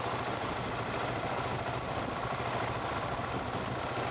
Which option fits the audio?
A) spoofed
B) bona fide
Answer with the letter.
B